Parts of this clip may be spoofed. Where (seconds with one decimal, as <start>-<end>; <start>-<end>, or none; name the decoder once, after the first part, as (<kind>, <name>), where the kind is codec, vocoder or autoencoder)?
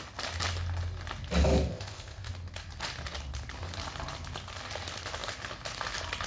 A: 1.7-2.3 (codec, ZipCodec)